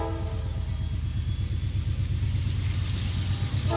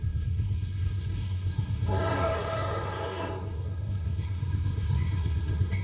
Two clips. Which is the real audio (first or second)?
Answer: first